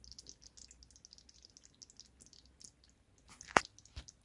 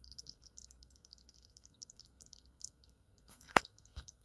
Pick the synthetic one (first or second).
second